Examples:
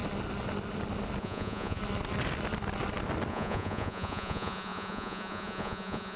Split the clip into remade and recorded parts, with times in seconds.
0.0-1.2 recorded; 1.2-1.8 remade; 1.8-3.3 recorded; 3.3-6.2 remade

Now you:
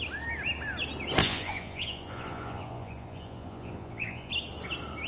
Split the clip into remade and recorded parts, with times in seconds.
0.0-1.2 recorded; 1.2-4.3 remade; 4.3-5.1 recorded

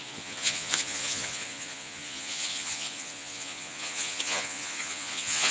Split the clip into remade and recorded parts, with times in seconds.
0.0-5.5 remade

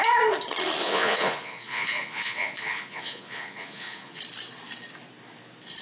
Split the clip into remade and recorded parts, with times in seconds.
0.0-0.8 recorded; 0.8-4.2 remade; 4.2-5.8 recorded

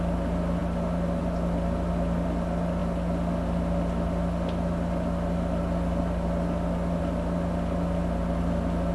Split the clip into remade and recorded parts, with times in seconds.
0.0-8.9 recorded

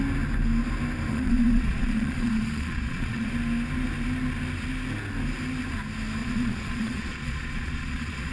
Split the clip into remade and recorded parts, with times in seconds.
0.0-1.1 recorded; 1.1-3.3 remade; 3.3-6.2 recorded; 6.2-8.3 remade